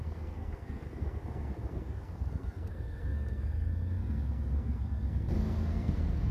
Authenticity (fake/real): fake